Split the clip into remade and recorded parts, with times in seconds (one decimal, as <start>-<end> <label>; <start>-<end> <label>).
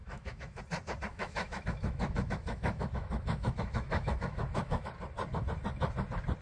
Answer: 0.0-0.6 remade; 0.6-1.1 recorded; 1.1-4.9 remade; 4.9-6.4 recorded